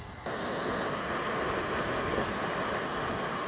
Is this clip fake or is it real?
real